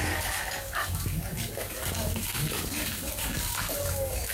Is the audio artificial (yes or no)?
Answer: yes